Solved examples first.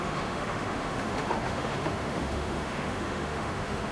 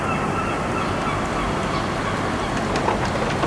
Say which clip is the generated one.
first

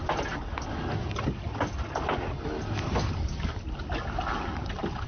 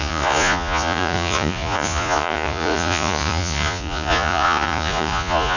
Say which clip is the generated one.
second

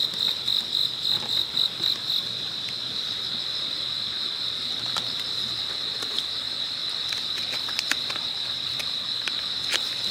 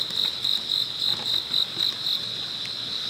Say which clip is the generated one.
first